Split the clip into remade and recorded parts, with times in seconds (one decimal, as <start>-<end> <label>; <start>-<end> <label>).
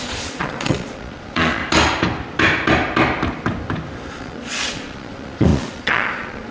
0.0-1.6 remade; 1.6-4.1 recorded; 4.1-6.5 remade